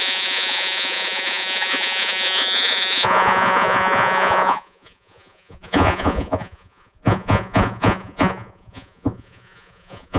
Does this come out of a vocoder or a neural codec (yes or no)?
yes